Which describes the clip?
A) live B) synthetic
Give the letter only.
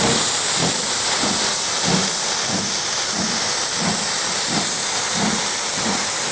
A